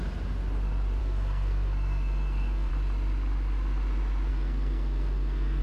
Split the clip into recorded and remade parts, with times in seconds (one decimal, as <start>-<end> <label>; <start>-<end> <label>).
0.0-1.0 recorded; 1.0-2.7 remade; 2.7-4.3 recorded; 4.3-5.6 remade